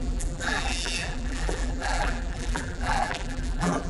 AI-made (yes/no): yes